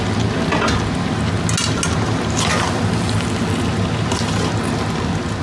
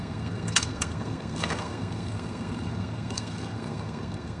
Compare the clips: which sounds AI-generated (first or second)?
second